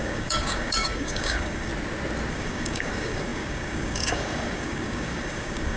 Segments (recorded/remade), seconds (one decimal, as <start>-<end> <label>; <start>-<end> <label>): 0.0-1.7 remade; 1.7-2.3 recorded; 2.3-5.8 remade